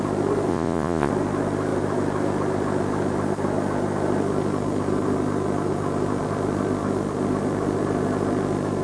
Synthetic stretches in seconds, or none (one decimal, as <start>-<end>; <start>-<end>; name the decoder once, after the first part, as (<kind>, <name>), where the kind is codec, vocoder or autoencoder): 0.5-1.1 (vocoder, Vocos)